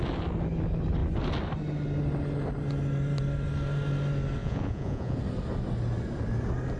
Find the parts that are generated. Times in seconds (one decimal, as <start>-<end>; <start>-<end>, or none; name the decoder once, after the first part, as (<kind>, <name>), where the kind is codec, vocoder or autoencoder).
4.4-5.2 (vocoder, Vocos)